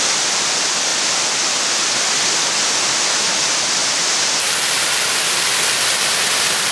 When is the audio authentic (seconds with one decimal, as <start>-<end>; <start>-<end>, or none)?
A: 0.0-3.8; 5.0-6.7